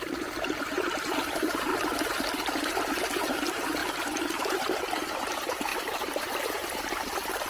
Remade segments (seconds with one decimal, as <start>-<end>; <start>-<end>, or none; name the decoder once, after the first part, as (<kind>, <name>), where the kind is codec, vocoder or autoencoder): 0.0-1.7 (vocoder, BigVGAN v2); 2.5-7.5